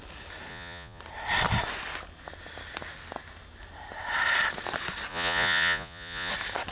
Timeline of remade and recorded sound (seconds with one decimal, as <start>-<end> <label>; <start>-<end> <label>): 0.0-0.5 recorded; 0.5-1.0 remade; 1.0-5.1 recorded; 5.1-6.3 remade; 6.3-6.7 recorded